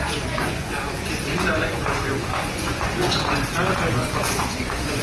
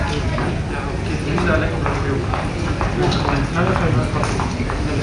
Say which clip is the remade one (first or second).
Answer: first